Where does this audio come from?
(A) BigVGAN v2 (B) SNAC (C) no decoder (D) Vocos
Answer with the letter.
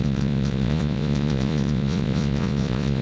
D